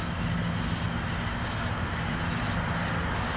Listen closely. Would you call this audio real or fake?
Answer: real